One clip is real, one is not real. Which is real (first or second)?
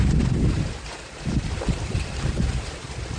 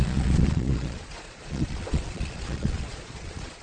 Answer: first